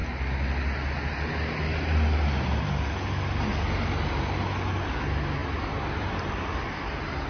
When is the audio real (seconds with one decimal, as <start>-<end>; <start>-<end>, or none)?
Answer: 0.0-7.3

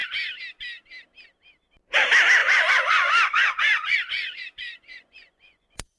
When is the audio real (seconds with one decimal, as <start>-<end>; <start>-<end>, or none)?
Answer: 0.0-2.4

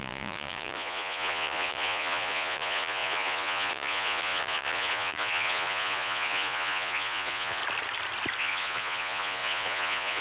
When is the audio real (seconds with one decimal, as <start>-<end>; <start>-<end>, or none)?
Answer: 7.6-8.4

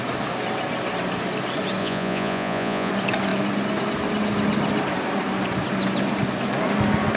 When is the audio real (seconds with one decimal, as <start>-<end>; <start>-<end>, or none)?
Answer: 0.0-1.8; 2.9-7.2

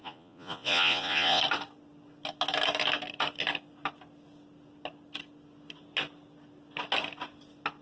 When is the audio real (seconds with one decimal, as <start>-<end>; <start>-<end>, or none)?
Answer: 1.4-7.8

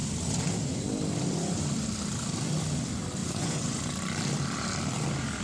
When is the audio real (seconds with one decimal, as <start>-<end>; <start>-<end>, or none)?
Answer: 0.0-3.2; 3.8-5.4